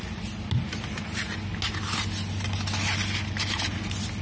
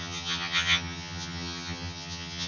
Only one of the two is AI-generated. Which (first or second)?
second